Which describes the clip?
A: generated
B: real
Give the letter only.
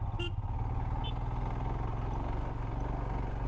B